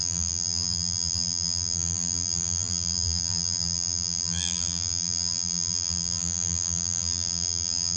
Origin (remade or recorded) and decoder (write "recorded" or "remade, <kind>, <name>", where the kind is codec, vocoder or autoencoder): remade, vocoder, BigVGAN v2